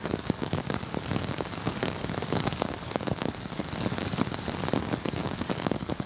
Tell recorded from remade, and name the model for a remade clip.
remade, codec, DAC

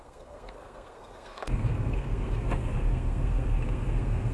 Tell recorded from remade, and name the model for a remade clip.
remade, codec, SNAC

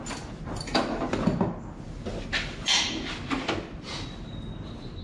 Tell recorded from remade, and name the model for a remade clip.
recorded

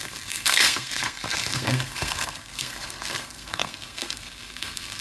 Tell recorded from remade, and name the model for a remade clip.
remade, codec, SNAC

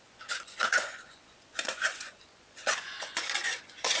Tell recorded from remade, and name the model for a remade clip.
remade, vocoder, Vocos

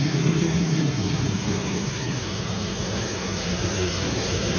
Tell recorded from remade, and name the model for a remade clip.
remade, codec, SNAC